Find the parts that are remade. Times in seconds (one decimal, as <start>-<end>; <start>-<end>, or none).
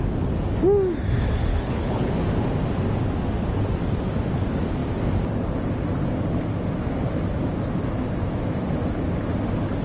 1.5-2.1